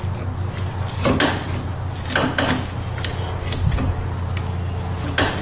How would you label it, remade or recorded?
recorded